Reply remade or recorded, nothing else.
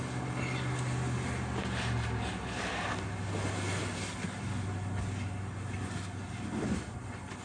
recorded